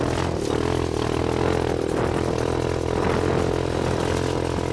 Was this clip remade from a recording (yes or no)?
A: no